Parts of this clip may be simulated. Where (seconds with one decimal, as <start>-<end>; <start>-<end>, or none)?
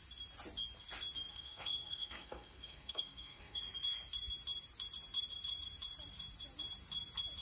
1.3-3.6